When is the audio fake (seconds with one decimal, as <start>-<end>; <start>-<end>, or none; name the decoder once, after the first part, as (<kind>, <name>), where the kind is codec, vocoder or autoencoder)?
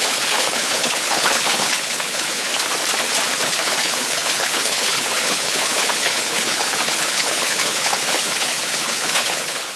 0.0-2.5 (codec, HILCodec); 3.3-9.8